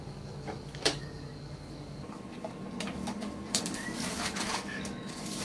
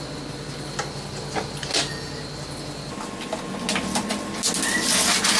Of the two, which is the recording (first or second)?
second